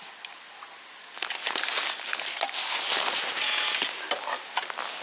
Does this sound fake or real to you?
real